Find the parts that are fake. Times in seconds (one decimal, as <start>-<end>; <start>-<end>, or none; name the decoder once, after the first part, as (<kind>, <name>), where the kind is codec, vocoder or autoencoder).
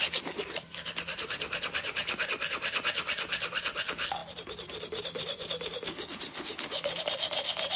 none